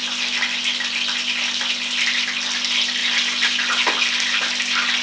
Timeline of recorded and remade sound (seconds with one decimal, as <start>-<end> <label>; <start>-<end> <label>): 0.0-5.0 recorded

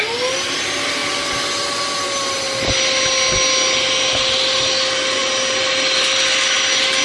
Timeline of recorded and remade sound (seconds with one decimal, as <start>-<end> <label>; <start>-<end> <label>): 0.0-7.0 recorded

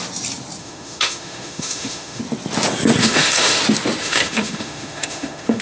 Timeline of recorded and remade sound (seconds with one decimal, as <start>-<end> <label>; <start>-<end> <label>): 0.0-0.6 recorded; 0.6-2.2 remade; 2.2-3.0 recorded; 3.0-3.6 remade; 3.6-4.0 recorded; 4.0-5.6 remade

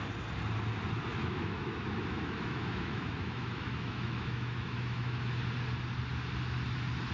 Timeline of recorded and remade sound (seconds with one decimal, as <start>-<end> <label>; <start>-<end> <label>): 0.0-1.1 recorded; 1.1-5.4 remade; 5.4-7.1 recorded

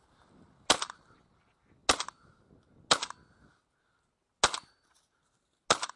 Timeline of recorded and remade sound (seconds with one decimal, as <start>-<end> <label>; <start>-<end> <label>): 0.0-6.0 recorded

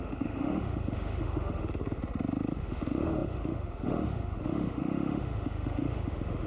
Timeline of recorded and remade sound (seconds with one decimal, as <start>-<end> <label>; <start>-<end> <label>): 0.0-2.0 remade; 2.0-2.6 recorded; 2.6-6.5 remade

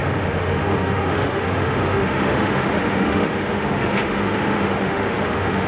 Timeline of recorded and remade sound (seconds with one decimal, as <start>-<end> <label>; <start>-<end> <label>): 0.0-5.7 remade

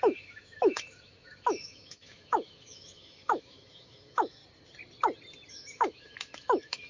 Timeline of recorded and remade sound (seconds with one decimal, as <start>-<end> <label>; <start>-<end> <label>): 0.0-4.4 remade; 4.4-5.5 recorded; 5.5-6.9 remade